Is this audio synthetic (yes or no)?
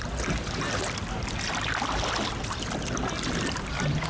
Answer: no